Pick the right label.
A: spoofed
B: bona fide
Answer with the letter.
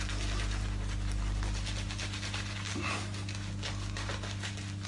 B